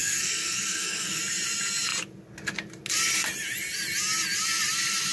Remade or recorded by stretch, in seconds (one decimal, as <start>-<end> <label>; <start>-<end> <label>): 0.0-1.2 remade; 1.2-5.1 recorded